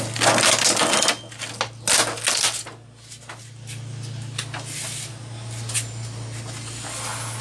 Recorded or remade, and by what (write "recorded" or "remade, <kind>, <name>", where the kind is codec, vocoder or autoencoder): recorded